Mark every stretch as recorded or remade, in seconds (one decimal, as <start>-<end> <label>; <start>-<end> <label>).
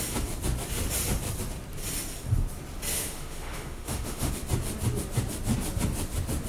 0.0-2.9 recorded; 2.9-4.3 remade; 4.3-6.5 recorded